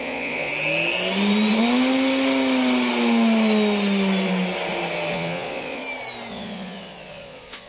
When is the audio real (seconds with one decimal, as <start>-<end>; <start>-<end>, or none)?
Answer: 0.5-5.1; 5.8-6.3